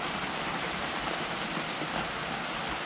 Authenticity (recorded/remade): recorded